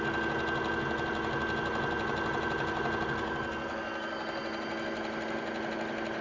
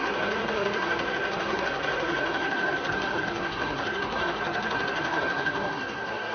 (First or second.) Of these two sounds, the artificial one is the second